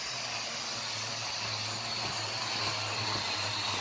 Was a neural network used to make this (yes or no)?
no